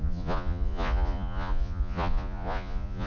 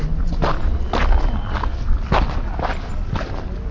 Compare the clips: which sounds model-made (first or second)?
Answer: first